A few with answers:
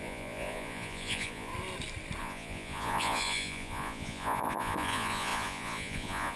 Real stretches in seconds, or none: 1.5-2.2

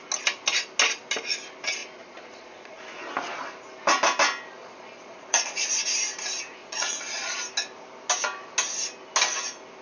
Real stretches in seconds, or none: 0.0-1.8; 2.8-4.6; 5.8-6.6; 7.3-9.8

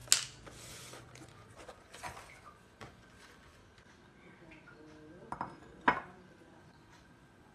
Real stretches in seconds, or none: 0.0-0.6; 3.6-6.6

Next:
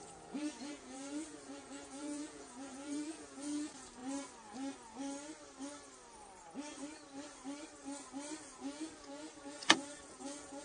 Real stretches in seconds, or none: 4.0-8.4

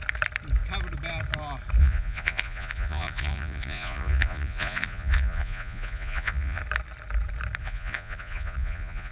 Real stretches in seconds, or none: 0.0-1.8; 6.6-7.6

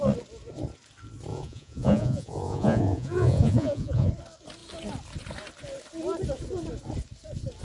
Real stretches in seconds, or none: 0.0-1.3; 4.1-7.6

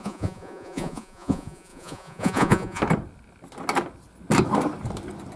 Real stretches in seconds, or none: 2.8-5.4

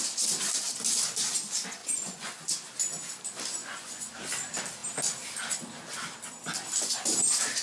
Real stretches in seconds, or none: 0.0-1.8; 2.3-3.6; 4.1-7.6